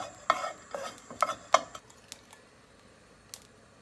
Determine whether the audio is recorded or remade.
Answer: recorded